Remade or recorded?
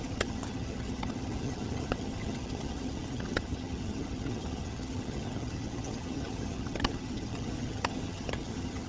remade